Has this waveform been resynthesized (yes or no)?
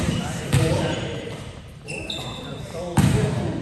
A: yes